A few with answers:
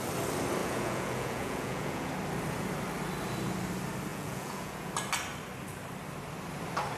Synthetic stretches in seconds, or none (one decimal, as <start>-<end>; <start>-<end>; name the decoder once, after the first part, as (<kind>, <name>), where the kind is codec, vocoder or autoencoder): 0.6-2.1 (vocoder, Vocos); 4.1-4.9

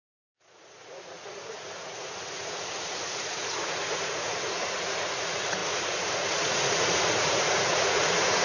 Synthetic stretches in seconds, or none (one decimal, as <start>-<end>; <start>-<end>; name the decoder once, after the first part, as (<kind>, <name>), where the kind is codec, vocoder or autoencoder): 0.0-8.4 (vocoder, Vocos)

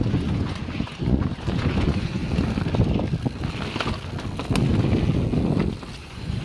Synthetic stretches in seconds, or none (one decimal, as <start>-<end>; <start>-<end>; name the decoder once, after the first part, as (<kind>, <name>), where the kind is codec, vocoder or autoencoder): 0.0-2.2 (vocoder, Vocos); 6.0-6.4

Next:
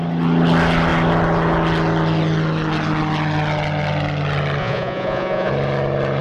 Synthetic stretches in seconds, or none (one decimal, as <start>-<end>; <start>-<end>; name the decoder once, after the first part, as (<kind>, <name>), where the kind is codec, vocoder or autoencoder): 4.6-5.5 (vocoder, Vocos)

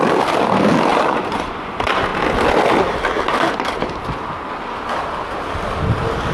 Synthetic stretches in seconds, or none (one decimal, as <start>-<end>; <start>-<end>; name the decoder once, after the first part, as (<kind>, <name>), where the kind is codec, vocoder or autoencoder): 0.9-1.7 (vocoder, Vocos)